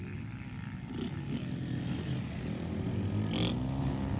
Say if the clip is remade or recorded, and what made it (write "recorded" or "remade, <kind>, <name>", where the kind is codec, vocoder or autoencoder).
recorded